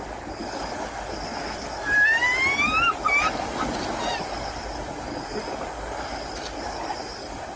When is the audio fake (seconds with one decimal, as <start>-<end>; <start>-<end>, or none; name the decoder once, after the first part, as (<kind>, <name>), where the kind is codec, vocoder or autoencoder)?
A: none